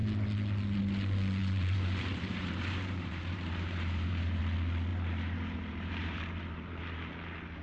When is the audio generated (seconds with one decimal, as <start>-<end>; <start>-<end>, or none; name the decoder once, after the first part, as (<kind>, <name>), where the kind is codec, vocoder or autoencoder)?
1.4-4.4 (vocoder, BigVGAN v2); 4.9-7.1

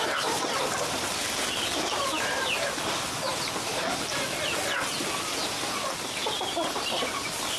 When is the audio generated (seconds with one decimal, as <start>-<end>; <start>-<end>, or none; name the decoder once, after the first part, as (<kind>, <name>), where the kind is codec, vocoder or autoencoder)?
none

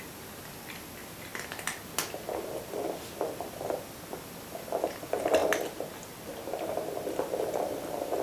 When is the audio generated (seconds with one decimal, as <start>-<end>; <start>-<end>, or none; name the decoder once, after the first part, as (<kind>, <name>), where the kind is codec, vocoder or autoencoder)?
0.0-1.3 (vocoder, BigVGAN v2); 3.4-5.4; 7.1-8.2

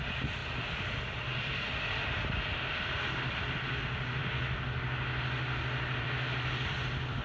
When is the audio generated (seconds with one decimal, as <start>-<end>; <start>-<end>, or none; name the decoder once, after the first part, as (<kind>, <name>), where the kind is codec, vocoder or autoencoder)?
0.0-4.2 (vocoder, BigVGAN v2); 6.0-7.2

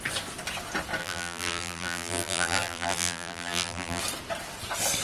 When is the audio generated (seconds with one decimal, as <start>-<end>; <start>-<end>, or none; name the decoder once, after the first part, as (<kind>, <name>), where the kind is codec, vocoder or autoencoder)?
1.0-4.0 (vocoder, BigVGAN v2)